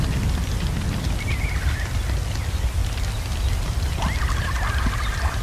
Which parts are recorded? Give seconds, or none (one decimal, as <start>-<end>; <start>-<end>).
0.0-5.4